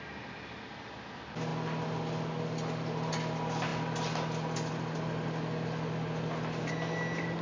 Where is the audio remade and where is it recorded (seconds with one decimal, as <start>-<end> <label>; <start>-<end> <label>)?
0.0-7.4 recorded